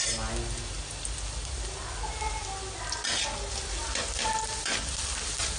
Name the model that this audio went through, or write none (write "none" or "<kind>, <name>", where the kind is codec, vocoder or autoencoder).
none